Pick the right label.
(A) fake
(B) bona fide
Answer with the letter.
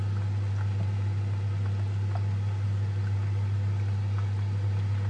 B